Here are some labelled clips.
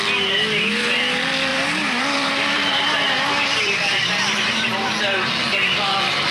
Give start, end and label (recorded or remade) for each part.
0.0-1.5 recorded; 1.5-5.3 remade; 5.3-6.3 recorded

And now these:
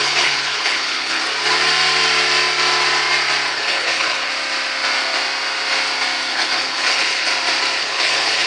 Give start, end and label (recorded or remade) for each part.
0.0-1.2 remade; 1.2-3.5 recorded; 3.5-4.3 remade; 4.3-6.3 recorded; 6.3-7.3 remade; 7.3-7.8 recorded; 7.8-8.5 remade

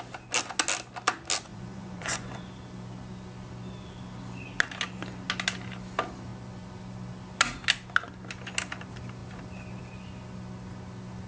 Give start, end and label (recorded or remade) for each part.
0.0-1.5 recorded; 1.5-2.5 remade; 2.5-11.3 recorded

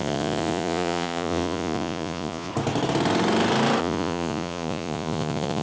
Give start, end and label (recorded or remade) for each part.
0.0-2.5 remade; 2.5-3.8 recorded; 3.8-5.6 remade

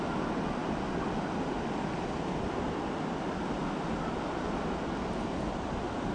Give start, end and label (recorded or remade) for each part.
0.0-6.1 recorded